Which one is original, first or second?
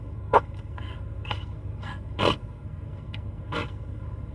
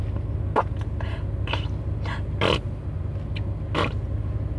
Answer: second